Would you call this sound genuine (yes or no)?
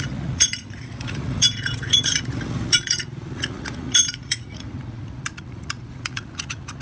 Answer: no